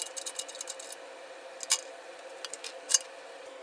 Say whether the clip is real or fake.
real